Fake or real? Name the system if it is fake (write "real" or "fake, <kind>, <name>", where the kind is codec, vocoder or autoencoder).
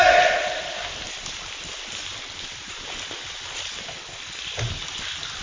real